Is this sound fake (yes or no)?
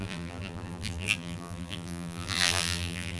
yes